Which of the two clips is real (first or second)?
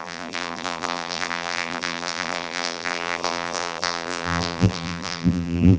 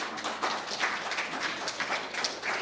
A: second